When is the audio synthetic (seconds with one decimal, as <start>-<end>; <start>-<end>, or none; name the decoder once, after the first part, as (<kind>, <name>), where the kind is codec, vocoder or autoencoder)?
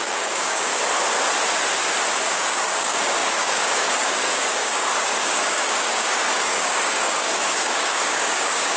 0.0-0.7 (codec, DAC); 2.3-8.8